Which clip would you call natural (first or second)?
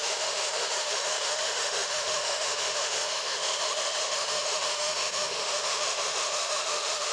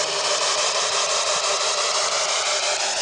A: second